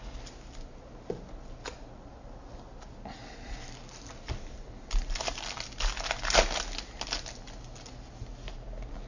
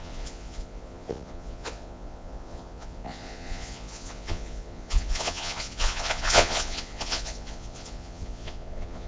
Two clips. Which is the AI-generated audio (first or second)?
second